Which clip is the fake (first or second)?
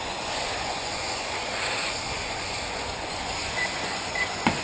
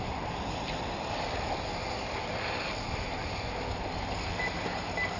first